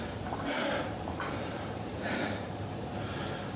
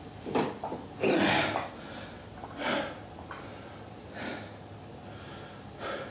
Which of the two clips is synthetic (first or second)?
first